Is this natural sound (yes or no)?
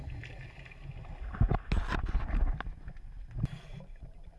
yes